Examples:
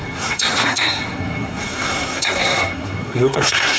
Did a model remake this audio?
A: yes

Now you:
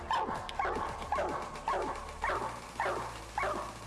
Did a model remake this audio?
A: no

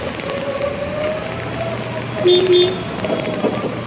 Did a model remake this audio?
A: no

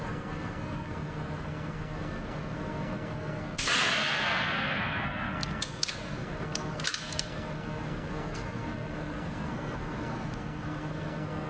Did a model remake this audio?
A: yes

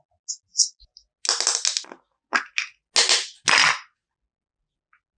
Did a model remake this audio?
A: no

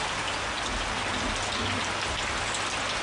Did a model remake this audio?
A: no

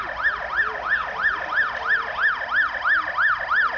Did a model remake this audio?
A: no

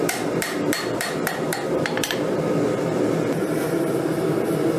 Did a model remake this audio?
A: no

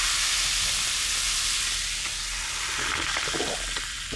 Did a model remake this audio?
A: no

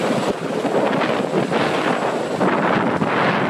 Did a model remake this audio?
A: no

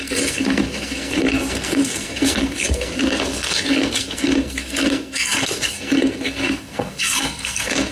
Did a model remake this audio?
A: yes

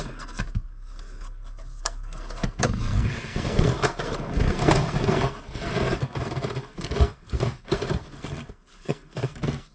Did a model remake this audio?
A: yes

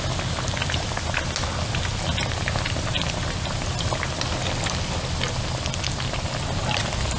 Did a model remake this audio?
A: no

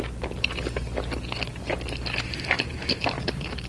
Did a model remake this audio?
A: no